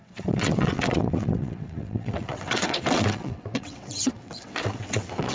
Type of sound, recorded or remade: remade